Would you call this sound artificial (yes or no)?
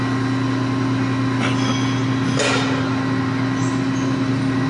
no